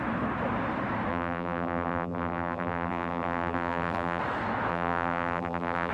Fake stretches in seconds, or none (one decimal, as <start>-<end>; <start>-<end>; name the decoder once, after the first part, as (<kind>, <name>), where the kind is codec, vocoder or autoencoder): 1.1-4.2 (vocoder, BigVGAN v2); 4.7-5.9